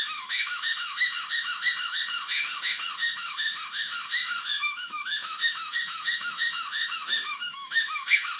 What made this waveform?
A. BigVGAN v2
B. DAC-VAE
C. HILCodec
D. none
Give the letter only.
B